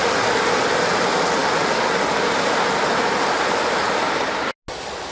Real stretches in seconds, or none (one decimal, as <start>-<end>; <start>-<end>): 0.0-5.1